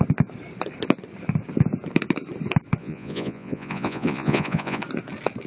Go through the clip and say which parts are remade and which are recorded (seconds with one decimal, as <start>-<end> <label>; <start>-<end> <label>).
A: 0.0-2.8 recorded; 2.8-4.8 remade; 4.8-5.5 recorded